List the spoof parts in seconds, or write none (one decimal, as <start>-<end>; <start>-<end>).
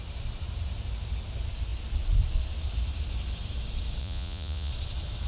4.0-4.7